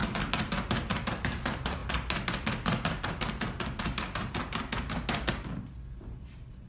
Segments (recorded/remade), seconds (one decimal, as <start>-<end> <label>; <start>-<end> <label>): 0.0-1.0 recorded; 1.0-1.8 remade; 1.8-5.3 recorded; 5.3-6.7 remade